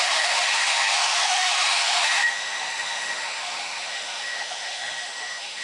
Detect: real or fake fake